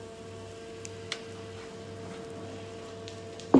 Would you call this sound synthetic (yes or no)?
no